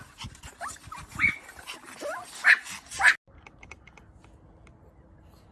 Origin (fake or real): real